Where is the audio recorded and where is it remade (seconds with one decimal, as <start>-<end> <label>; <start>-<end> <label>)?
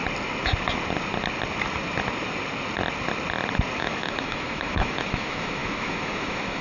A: 0.0-3.8 recorded; 3.8-6.6 remade